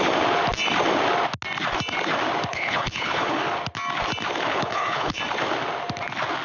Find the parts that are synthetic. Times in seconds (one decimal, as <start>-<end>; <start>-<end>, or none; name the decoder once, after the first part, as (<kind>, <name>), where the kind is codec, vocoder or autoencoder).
2.5-3.4 (codec, HILCodec); 4.5-5.2